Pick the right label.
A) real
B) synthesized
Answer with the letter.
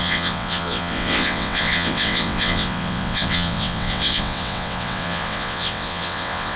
B